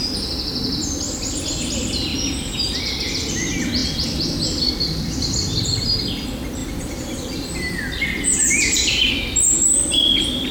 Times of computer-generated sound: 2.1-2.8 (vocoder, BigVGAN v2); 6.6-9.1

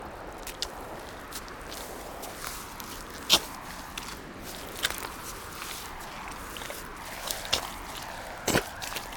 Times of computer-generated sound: none

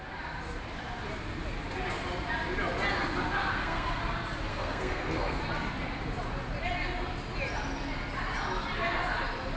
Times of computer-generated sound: 3.5-4.0 (codec, SNAC); 4.5-5.4

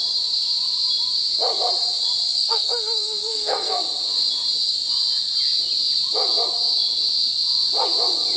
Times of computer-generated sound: 2.3-3.8 (codec, SNAC)

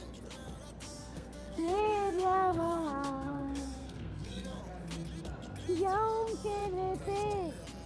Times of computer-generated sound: 1.0-4.6 (codec, SNAC)